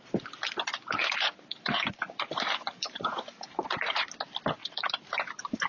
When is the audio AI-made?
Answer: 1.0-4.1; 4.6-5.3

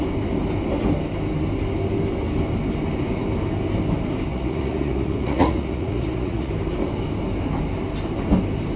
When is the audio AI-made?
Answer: 4.3-6.5

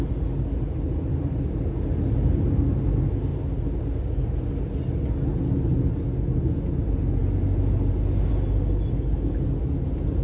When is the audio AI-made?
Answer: none

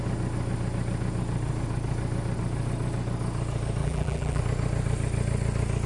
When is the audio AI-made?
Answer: 3.8-4.4

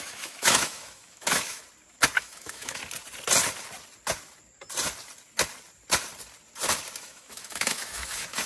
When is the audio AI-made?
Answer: 0.0-1.6; 2.2-2.8; 7.0-8.5

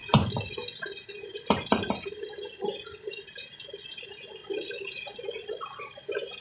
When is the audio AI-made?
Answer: 0.0-4.4; 5.8-6.4

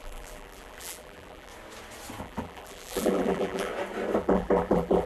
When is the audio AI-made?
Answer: 0.0-1.5; 2.2-3.7; 4.2-5.1